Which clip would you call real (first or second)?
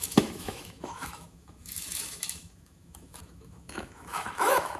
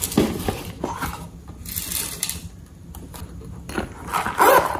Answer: second